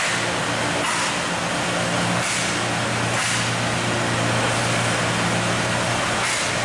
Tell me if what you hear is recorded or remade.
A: recorded